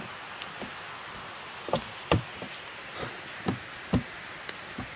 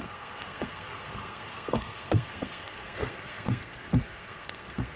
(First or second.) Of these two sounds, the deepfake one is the second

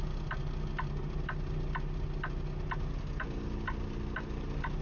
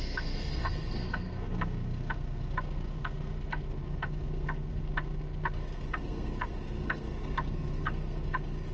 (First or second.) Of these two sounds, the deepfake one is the second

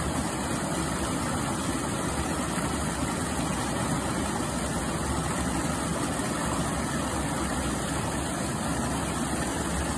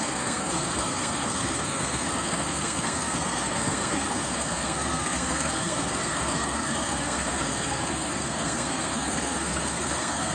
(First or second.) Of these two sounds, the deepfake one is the second